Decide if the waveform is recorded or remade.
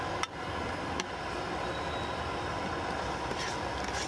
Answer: recorded